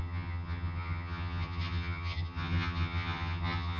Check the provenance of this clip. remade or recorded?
remade